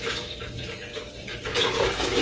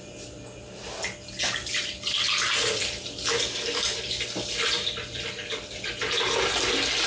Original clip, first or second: second